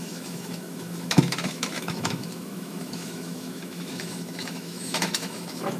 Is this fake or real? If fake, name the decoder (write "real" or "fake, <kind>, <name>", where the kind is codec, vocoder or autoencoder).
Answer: fake, autoencoder, DAC-VAE